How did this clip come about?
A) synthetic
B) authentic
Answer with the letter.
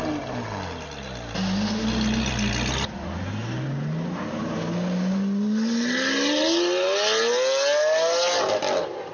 B